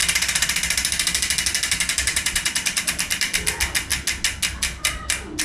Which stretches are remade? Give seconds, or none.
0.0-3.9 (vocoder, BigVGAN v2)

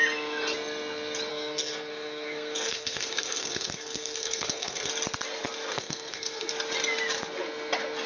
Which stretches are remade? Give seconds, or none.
1.3-4.9 (codec, SNAC); 5.7-6.5

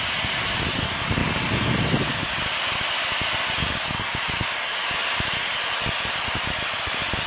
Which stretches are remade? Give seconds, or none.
none

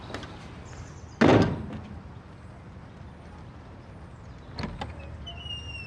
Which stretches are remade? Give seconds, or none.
none

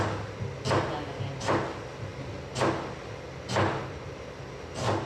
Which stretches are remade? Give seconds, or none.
none